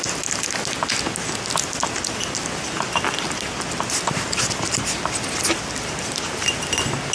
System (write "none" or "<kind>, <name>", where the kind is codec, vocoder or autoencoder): none